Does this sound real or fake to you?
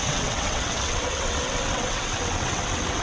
fake